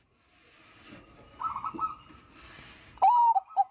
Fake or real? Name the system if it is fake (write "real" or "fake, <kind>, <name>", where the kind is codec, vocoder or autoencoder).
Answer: real